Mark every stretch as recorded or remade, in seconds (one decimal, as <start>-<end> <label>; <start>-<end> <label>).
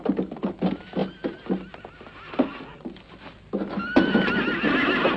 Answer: 0.0-5.2 recorded